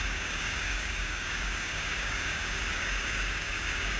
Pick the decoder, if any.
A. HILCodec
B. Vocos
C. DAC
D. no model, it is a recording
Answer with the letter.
C